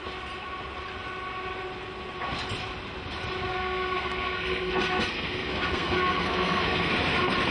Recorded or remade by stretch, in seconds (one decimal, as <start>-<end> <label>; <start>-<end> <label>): 0.0-3.5 recorded; 3.5-6.9 remade; 6.9-7.5 recorded